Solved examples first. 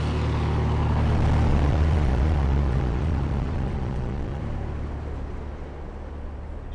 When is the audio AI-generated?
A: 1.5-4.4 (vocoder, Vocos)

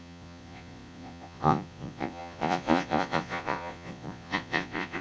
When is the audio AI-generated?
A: 0.0-5.0 (vocoder, Vocos)

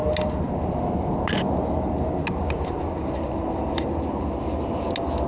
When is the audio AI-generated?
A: none

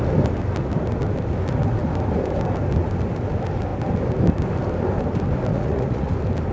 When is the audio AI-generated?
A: 5.5-6.1 (vocoder, Vocos)

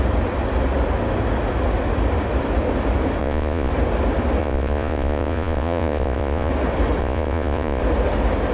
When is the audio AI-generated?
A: 3.2-3.7 (vocoder, Vocos); 4.4-6.5; 7.0-7.8